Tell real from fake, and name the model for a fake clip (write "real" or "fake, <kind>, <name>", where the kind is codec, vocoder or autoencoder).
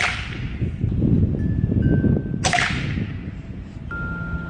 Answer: real